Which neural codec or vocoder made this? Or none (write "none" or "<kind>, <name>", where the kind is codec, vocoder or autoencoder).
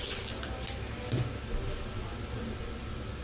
none